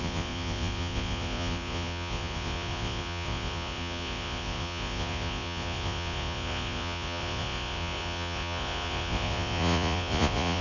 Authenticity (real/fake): fake